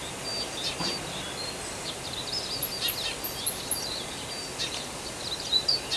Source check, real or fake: real